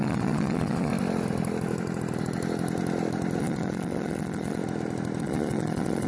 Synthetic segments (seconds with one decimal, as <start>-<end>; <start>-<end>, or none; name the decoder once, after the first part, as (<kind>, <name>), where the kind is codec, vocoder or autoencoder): 0.0-0.9 (vocoder, Vocos); 3.4-4.6; 5.2-6.1